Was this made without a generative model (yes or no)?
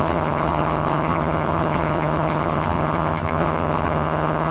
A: no